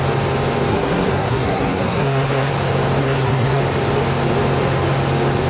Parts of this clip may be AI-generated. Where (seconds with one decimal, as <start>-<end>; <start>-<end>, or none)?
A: 0.7-2.5; 3.0-3.6